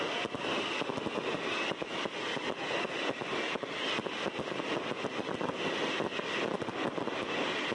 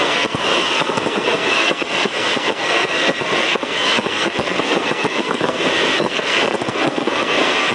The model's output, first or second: second